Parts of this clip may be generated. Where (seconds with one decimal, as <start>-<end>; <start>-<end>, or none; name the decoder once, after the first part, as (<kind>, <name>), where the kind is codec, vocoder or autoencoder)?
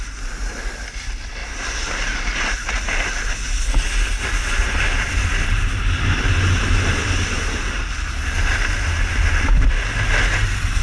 none